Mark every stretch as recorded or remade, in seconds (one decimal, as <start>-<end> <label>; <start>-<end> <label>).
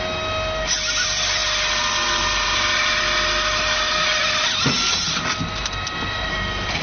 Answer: 0.0-6.8 recorded